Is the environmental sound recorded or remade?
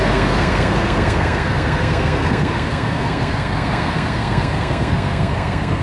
remade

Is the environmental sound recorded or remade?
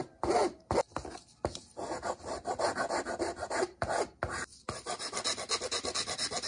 recorded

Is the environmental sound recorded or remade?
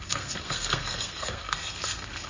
remade